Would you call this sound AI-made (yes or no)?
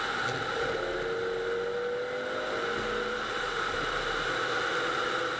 no